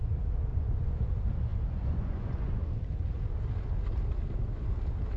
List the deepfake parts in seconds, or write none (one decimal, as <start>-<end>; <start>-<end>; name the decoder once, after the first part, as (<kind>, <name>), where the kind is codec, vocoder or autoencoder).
0.5-1.1 (vocoder, Vocos); 1.5-2.6